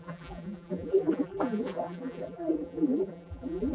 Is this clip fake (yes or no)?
yes